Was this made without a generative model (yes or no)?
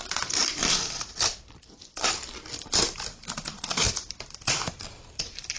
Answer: no